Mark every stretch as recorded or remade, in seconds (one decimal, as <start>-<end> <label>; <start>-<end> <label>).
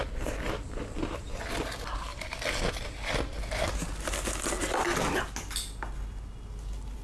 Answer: 0.0-7.0 recorded